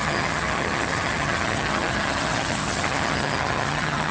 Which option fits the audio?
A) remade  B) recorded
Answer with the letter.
A